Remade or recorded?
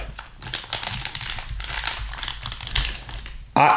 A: recorded